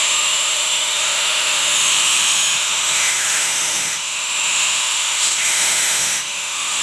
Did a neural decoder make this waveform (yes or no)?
yes